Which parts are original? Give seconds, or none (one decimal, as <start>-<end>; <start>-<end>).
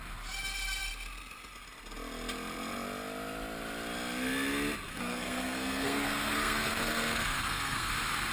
0.0-4.9; 7.9-8.3